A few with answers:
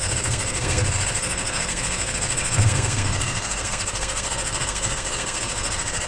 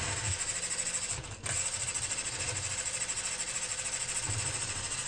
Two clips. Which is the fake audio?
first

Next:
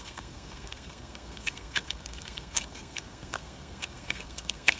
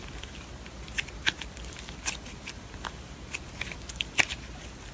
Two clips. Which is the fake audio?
first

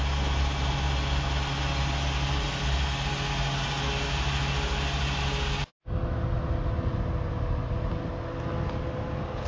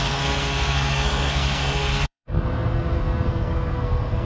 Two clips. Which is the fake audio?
second